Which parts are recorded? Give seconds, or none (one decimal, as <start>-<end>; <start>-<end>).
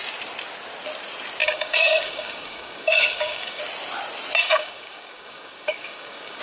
0.0-1.4; 3.6-4.4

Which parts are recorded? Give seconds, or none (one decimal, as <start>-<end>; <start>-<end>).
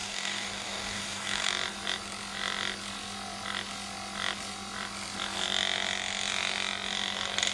1.5-7.5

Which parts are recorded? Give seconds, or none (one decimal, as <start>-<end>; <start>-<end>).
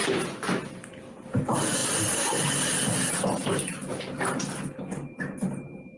0.0-6.0